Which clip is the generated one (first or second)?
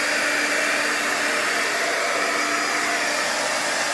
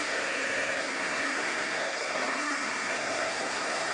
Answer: second